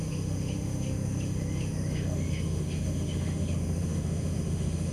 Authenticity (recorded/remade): remade